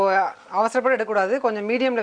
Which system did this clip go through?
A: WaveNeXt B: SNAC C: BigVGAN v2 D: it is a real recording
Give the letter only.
D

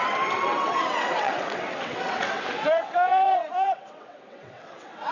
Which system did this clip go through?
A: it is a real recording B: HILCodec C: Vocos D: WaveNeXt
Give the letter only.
D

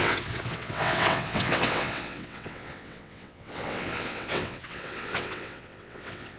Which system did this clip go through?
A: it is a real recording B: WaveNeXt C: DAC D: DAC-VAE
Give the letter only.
B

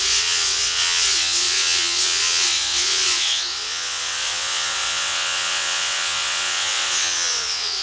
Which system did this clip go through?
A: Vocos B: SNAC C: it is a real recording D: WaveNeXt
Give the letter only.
D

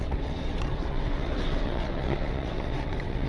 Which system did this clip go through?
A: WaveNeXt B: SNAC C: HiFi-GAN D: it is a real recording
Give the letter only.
A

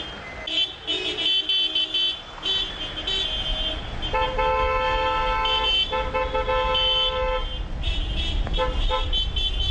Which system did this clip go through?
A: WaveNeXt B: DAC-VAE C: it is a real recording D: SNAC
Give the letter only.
C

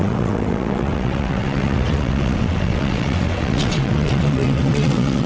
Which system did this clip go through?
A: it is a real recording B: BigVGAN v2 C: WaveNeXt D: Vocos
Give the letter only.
C